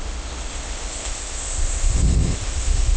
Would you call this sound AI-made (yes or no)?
yes